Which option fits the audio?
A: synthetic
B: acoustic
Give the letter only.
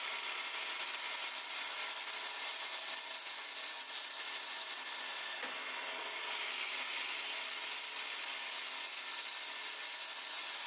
B